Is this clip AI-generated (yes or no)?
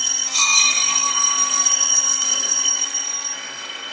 yes